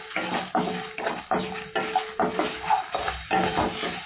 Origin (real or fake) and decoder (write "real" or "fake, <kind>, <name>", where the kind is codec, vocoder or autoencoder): real